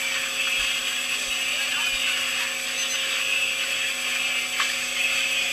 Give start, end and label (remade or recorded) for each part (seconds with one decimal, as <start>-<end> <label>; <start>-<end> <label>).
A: 0.0-5.5 recorded